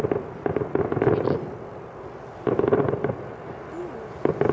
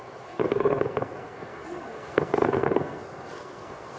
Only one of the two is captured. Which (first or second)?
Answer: first